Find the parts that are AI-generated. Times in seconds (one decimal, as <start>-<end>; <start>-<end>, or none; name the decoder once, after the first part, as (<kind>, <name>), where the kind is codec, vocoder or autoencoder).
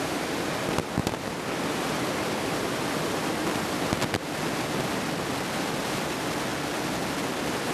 none